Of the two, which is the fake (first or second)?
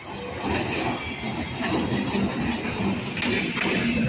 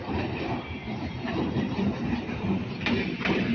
second